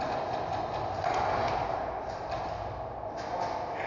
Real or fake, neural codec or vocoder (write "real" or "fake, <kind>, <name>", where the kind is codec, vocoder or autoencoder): real